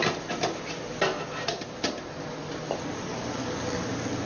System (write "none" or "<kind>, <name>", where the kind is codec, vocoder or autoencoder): none